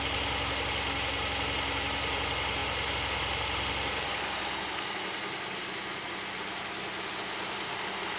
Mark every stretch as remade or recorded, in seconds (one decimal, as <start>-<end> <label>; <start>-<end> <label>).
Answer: 0.0-8.2 recorded